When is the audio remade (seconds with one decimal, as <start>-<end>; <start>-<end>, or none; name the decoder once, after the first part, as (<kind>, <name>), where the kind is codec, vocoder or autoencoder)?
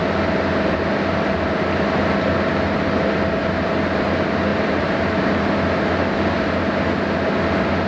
4.5-5.4 (vocoder, BigVGAN v2)